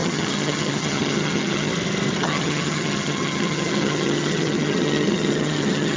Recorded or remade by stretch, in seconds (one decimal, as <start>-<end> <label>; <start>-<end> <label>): 0.0-1.7 remade; 1.7-2.2 recorded; 2.2-6.0 remade